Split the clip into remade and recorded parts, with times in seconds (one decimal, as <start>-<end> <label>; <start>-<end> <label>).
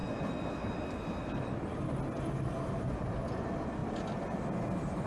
0.0-5.1 recorded